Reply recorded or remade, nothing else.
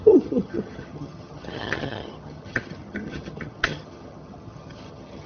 remade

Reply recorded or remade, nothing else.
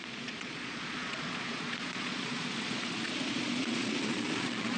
remade